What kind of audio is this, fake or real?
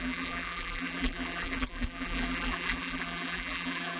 fake